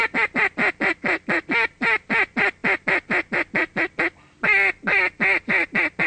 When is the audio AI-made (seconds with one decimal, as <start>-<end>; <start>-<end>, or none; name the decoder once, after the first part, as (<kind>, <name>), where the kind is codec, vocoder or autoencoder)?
none